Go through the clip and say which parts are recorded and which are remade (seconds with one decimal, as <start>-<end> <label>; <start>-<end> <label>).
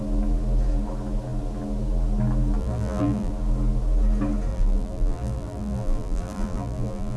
0.0-2.6 recorded; 2.6-3.3 remade; 3.3-4.5 recorded; 4.5-7.2 remade